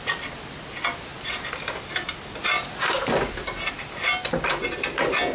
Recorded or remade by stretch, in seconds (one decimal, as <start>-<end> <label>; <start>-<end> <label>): 0.0-5.3 recorded